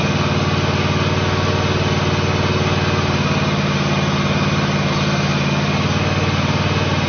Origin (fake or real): real